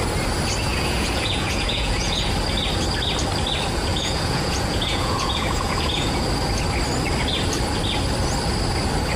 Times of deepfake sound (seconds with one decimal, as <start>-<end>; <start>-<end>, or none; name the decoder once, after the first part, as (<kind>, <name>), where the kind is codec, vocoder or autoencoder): 0.7-2.3 (vocoder, Vocos); 3.9-6.2